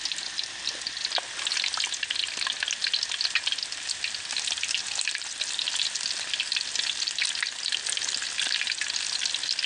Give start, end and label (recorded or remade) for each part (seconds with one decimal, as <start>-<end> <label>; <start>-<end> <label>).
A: 0.0-9.7 recorded